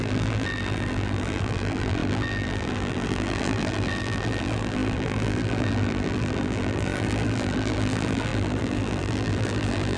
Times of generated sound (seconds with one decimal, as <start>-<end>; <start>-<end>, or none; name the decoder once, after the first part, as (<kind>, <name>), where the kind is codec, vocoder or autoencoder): 0.0-10.0 (vocoder, BigVGAN v2)